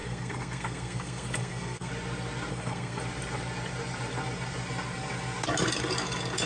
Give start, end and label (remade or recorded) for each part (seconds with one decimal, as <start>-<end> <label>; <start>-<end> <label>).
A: 0.0-1.9 remade; 1.9-2.5 recorded; 2.5-3.0 remade; 3.0-6.5 recorded